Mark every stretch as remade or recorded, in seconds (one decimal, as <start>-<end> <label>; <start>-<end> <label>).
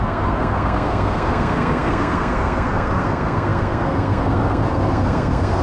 0.0-5.6 remade